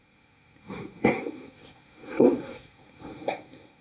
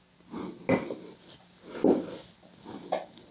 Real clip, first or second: second